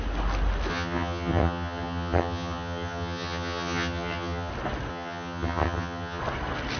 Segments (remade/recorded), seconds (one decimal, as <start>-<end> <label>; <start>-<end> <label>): 0.0-0.7 recorded; 0.7-4.5 remade; 4.5-4.9 recorded; 4.9-6.2 remade; 6.2-6.8 recorded